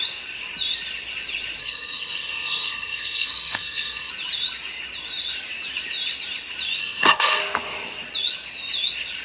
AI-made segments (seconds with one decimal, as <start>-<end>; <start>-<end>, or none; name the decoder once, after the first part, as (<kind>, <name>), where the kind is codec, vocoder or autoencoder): 1.6-4.1 (codec, SNAC); 6.8-7.4